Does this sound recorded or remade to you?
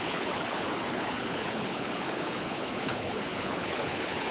remade